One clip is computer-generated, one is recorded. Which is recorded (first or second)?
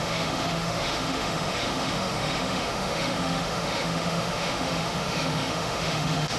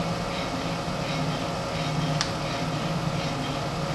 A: second